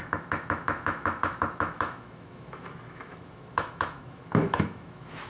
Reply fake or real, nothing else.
fake